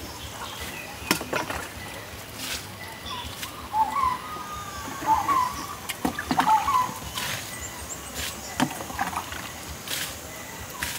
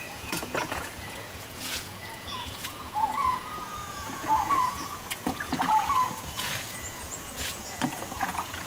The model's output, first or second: second